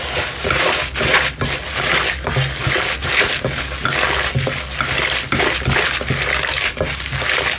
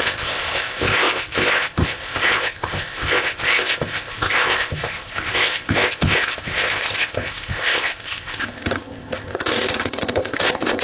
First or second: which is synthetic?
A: second